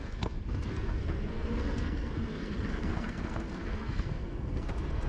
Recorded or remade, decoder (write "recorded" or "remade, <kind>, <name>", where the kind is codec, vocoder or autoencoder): remade, codec, SNAC